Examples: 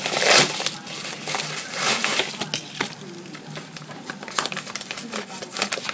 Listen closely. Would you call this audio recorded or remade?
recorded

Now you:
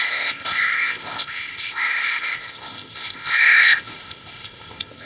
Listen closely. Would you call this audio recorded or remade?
remade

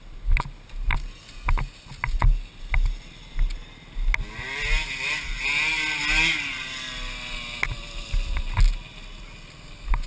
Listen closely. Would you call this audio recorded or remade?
recorded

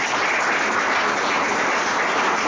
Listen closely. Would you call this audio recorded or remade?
recorded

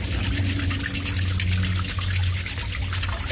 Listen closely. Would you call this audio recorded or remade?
recorded